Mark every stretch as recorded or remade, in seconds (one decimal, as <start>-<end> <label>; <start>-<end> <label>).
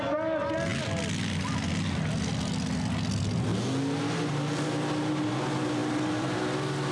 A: 0.0-5.8 recorded; 5.8-6.4 remade; 6.4-6.9 recorded